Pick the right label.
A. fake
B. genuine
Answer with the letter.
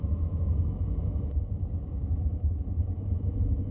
A